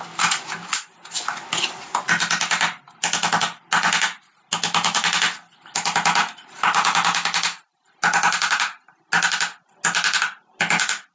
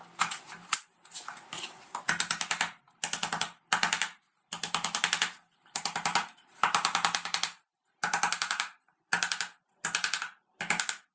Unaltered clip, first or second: first